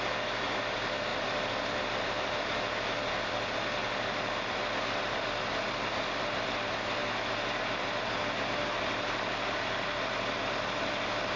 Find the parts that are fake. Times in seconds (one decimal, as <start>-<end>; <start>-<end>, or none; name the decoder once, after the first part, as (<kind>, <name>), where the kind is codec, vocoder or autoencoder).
none